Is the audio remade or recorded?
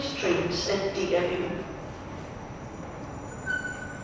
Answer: recorded